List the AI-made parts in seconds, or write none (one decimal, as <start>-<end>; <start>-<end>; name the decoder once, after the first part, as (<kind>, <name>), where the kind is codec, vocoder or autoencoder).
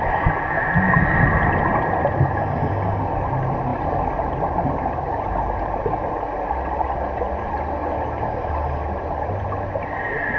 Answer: none